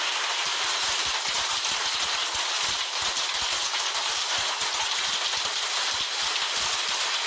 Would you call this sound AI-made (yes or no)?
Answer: no